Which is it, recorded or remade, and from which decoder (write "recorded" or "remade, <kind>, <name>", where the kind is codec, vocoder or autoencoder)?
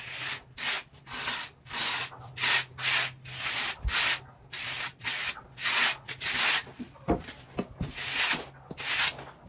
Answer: recorded